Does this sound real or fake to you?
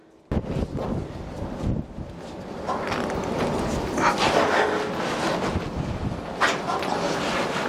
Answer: real